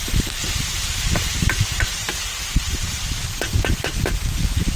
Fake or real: fake